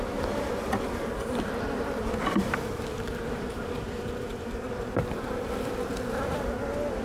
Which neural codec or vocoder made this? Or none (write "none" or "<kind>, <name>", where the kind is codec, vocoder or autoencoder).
vocoder, BigVGAN v2